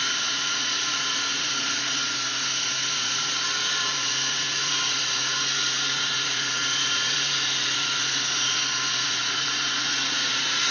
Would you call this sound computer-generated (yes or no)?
yes